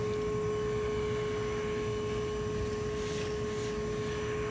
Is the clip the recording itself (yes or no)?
yes